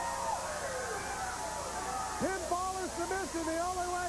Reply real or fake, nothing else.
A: real